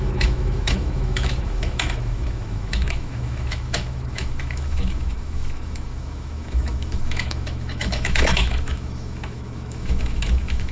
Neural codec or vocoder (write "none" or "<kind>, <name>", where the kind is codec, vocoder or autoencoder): autoencoder, DAC-VAE